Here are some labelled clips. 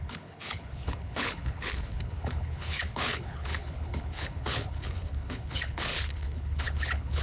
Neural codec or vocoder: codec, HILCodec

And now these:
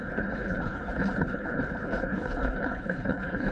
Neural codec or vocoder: codec, HILCodec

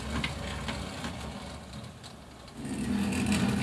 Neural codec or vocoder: none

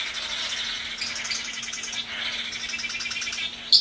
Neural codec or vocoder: none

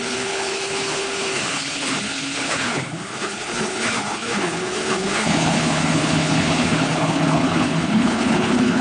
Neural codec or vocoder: codec, HILCodec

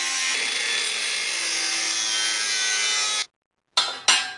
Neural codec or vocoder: none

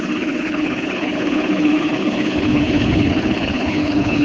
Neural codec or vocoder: codec, HILCodec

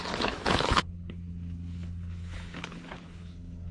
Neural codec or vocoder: codec, HILCodec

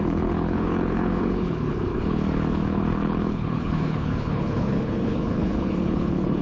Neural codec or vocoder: codec, HILCodec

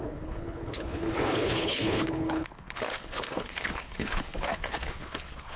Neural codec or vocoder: codec, HILCodec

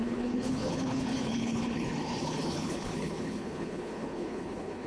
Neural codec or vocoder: codec, HILCodec